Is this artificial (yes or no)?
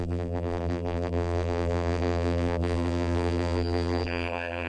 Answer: yes